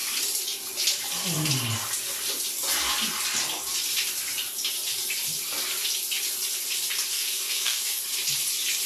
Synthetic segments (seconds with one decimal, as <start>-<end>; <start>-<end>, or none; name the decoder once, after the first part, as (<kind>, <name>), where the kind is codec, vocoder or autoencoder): 7.1-8.0 (codec, DAC)